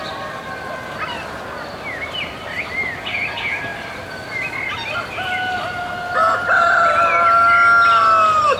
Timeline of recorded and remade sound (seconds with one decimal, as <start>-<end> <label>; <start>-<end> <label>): 0.0-8.6 recorded